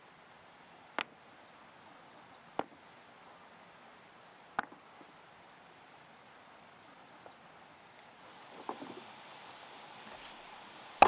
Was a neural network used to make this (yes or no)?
no